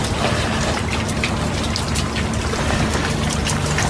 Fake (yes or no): no